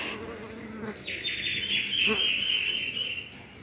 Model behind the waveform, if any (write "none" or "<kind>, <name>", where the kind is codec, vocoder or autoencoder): none